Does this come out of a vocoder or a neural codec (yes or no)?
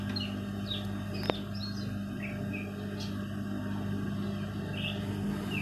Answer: no